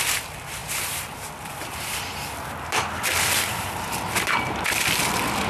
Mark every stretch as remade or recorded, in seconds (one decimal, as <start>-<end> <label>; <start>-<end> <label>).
0.0-5.5 remade